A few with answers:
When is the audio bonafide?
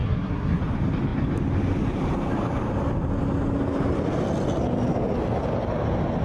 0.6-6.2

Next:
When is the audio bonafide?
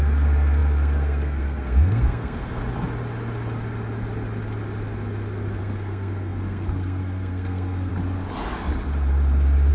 2.6-5.6; 7.9-9.7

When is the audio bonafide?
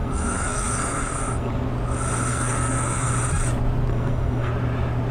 1.5-2.3; 3.1-3.9; 4.5-5.1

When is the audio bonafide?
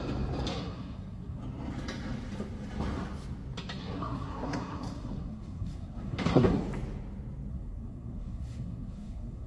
0.0-0.5; 1.4-3.8; 6.6-7.5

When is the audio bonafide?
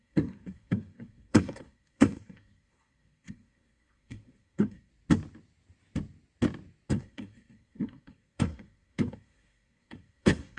4.9-6.9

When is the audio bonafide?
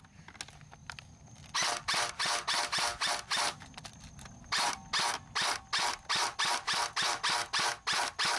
0.0-8.4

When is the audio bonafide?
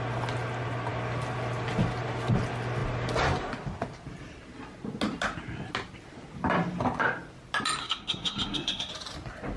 0.0-7.8; 8.9-9.6